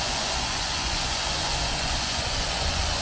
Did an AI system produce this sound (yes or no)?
yes